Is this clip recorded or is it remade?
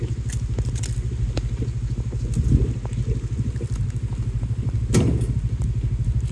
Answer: recorded